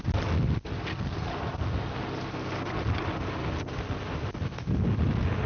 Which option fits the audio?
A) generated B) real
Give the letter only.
B